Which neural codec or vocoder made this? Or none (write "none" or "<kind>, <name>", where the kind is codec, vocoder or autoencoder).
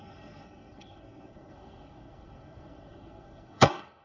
codec, SNAC